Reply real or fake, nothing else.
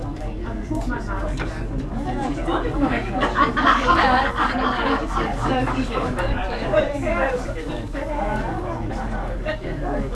fake